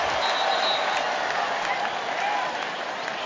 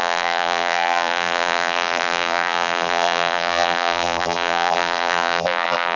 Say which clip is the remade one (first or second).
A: second